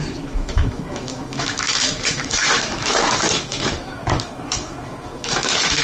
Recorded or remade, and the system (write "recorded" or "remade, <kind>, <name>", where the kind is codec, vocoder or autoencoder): remade, autoencoder, DAC-VAE